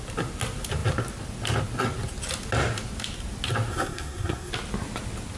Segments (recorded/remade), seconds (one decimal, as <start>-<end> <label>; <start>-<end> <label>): 0.0-3.7 recorded; 3.7-4.5 remade; 4.5-5.4 recorded

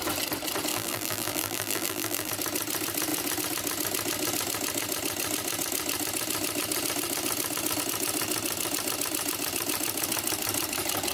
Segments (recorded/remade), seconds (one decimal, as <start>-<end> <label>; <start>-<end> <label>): 0.0-0.7 recorded; 0.7-2.3 remade; 2.3-11.1 recorded

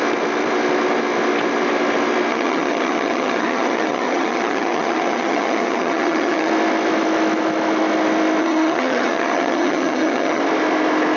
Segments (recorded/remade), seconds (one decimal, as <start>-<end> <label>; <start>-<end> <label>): 0.0-2.3 recorded; 2.3-6.5 remade; 6.5-8.4 recorded; 8.4-10.4 remade; 10.4-11.2 recorded

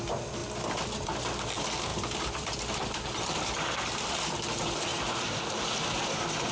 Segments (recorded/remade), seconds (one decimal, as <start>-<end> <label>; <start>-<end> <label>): 0.0-1.9 recorded; 1.9-4.1 remade; 4.1-4.9 recorded; 4.9-5.5 remade; 5.5-6.5 recorded

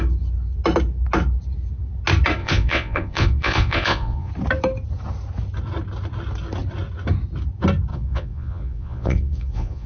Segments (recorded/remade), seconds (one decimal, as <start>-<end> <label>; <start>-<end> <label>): 0.0-2.4 recorded; 2.4-4.3 remade; 4.3-7.9 recorded; 7.9-9.9 remade

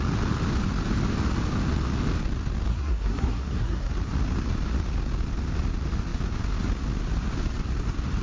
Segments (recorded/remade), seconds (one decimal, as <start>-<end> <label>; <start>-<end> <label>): 0.0-2.7 recorded; 2.7-3.9 remade; 3.9-8.2 recorded